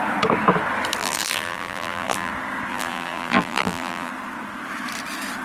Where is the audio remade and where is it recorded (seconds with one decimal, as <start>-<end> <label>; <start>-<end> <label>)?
0.0-1.0 recorded; 1.0-2.3 remade; 2.3-2.7 recorded; 2.7-4.1 remade; 4.1-5.4 recorded